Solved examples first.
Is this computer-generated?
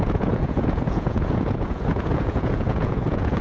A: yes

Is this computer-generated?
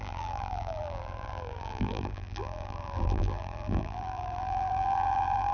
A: yes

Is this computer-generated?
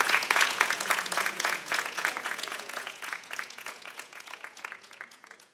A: yes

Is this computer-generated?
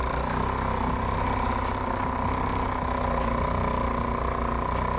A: no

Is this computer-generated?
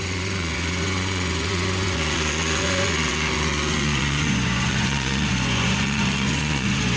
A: yes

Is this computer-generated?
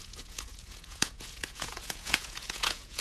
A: yes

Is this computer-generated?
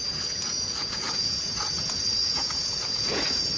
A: yes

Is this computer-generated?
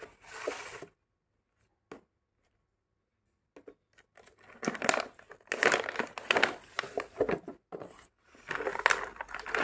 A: no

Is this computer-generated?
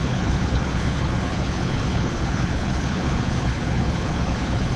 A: yes